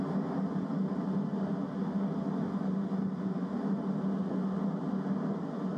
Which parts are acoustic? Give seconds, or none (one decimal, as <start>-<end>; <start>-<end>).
0.0-5.8